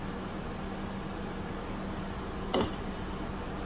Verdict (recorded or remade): recorded